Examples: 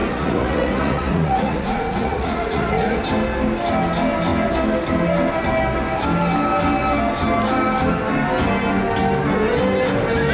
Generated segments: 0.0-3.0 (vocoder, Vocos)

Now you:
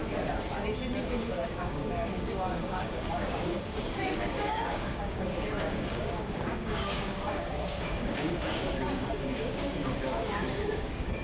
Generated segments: 1.0-11.2 (codec, DAC)

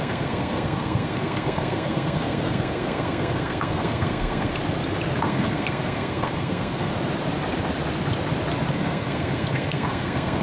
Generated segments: 0.0-4.5 (codec, SNAC); 5.2-6.9; 8.7-10.4

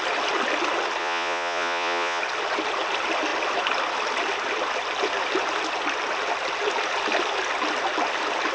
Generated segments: 1.0-2.2 (vocoder, Vocos)